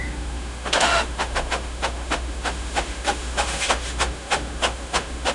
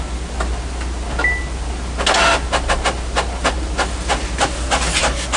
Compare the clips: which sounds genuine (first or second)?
second